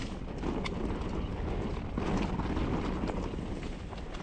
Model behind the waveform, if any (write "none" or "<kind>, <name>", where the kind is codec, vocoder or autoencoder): none